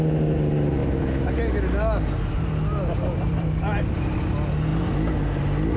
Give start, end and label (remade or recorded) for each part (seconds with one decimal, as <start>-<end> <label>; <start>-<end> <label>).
0.0-5.8 recorded